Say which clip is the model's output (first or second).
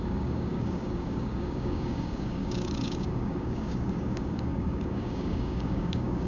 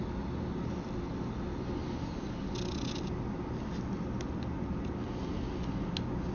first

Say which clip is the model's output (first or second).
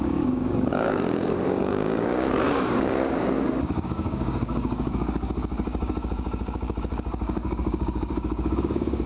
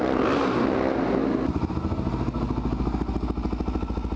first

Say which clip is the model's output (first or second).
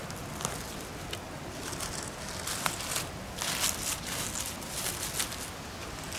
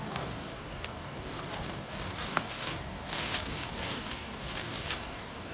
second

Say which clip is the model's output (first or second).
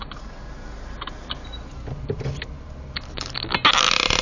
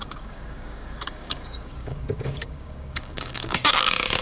second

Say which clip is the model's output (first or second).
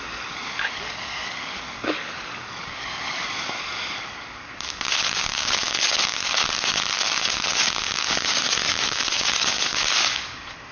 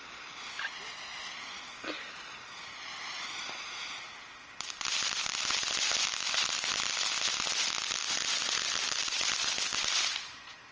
first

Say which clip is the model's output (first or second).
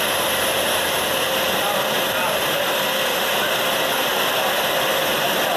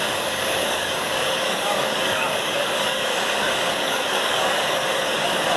second